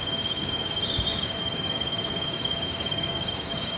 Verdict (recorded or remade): remade